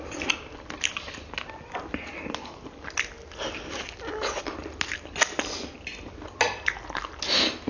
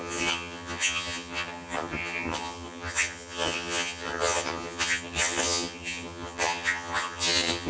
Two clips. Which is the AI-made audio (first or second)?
second